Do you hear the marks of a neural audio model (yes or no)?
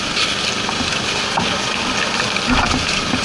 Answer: no